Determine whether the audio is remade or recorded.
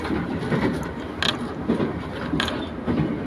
recorded